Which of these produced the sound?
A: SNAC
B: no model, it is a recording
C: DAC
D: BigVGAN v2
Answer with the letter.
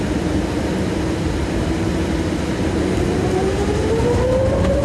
B